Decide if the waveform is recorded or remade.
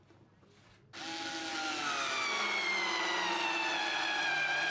recorded